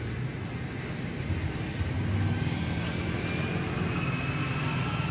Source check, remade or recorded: recorded